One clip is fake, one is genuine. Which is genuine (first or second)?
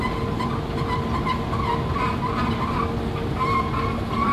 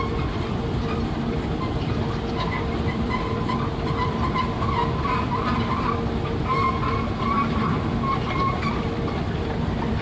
first